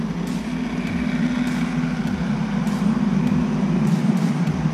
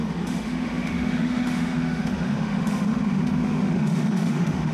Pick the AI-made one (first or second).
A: second